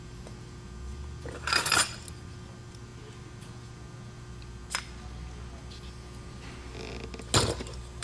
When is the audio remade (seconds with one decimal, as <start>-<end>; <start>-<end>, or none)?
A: none